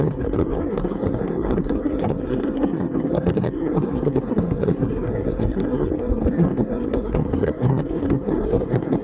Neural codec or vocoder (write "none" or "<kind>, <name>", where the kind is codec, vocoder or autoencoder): codec, SNAC